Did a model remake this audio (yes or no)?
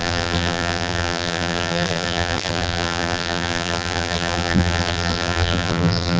yes